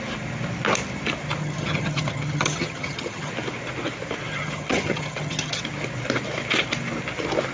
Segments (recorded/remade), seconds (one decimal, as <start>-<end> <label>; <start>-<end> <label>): 0.0-1.4 recorded; 1.4-3.3 remade; 3.3-4.3 recorded; 4.3-5.6 remade; 5.6-7.5 recorded